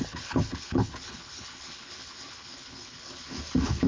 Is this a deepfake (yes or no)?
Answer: yes